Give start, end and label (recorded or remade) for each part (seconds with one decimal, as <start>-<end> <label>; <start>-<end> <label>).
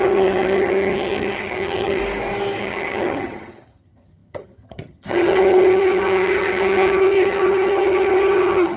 0.0-2.0 remade; 2.0-2.6 recorded; 2.6-8.8 remade